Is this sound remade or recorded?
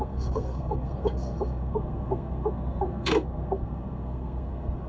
remade